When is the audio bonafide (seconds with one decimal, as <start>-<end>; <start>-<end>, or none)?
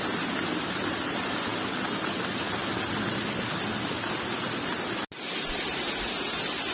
0.0-6.7